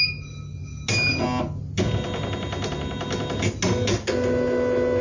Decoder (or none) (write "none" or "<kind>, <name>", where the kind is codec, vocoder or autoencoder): none